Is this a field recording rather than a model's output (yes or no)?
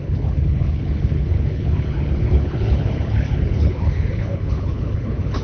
no